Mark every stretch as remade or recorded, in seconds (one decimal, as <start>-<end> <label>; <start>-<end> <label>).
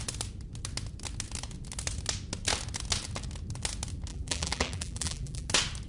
0.0-4.1 recorded; 4.1-5.5 remade; 5.5-5.9 recorded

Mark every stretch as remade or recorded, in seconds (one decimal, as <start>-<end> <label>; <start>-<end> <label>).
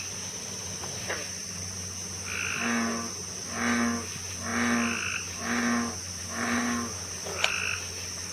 0.0-8.3 recorded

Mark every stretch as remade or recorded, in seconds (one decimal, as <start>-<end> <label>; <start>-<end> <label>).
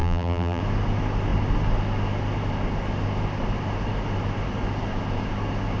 0.0-0.6 remade; 0.6-5.8 recorded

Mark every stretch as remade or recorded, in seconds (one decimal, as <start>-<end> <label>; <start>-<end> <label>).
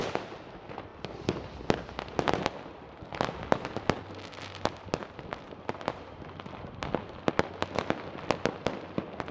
0.0-9.3 recorded